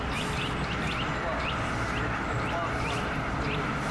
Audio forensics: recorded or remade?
recorded